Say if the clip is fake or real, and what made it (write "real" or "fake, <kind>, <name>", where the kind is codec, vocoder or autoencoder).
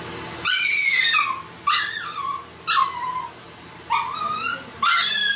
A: real